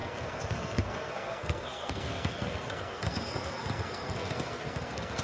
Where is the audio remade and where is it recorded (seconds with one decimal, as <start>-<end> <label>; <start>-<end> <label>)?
0.0-5.2 remade